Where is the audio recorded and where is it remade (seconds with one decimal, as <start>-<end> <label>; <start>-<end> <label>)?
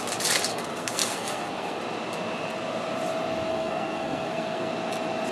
0.0-0.5 recorded; 0.5-1.8 remade; 1.8-3.5 recorded; 3.5-4.7 remade; 4.7-5.3 recorded